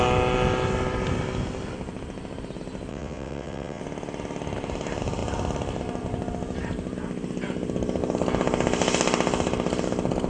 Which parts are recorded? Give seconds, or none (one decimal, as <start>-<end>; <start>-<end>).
0.0-2.9; 3.8-10.3